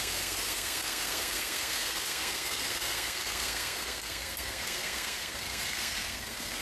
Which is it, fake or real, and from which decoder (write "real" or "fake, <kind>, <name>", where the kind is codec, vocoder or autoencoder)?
fake, codec, SNAC